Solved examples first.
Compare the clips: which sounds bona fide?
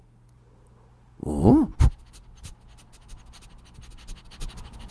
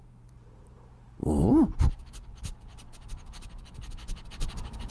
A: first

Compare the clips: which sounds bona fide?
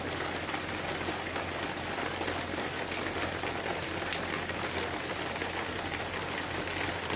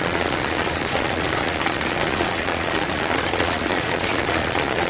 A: first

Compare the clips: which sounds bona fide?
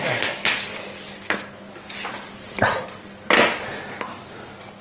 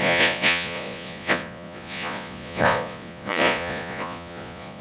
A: first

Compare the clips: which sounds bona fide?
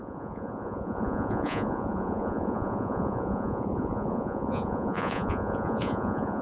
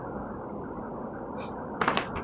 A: second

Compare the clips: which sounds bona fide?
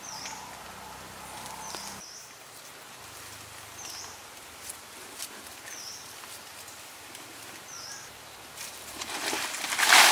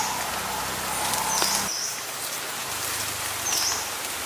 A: second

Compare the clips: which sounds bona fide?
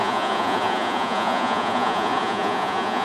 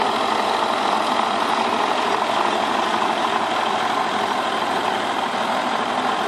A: second